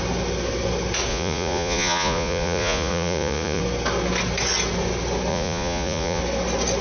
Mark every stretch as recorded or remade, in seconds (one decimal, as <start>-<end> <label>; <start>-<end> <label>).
0.0-1.1 recorded; 1.1-3.6 remade; 3.6-5.3 recorded; 5.3-6.2 remade; 6.2-6.8 recorded